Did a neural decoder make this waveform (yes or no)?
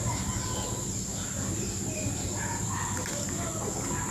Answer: no